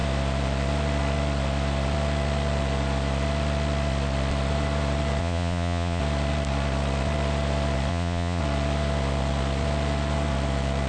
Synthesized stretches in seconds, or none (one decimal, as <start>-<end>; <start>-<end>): 5.2-6.0; 7.9-8.4